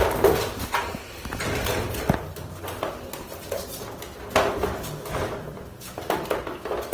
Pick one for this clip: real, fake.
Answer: real